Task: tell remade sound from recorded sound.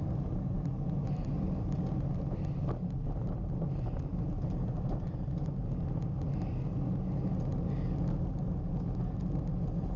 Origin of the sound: recorded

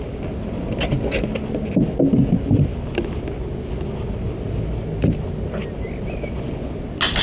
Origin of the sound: recorded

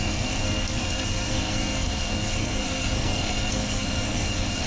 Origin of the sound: remade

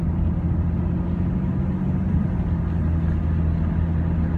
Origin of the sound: recorded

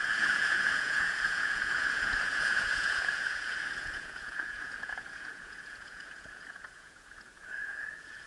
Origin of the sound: remade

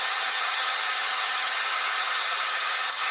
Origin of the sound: remade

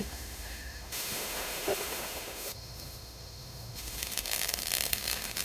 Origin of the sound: remade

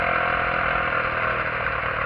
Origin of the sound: recorded